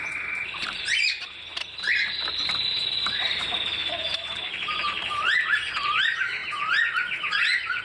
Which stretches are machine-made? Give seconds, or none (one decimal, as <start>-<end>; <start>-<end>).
0.0-7.8